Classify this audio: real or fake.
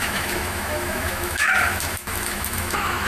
fake